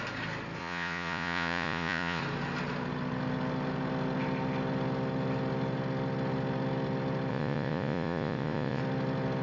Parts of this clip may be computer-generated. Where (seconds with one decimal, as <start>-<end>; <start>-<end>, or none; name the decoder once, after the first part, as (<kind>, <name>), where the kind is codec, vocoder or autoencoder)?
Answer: 0.6-2.2 (vocoder, Vocos); 7.3-8.8